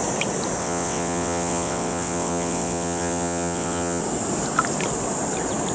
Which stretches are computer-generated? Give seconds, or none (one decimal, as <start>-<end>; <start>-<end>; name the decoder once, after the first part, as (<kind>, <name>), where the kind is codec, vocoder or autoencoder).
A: 0.6-4.0 (vocoder, WaveNeXt)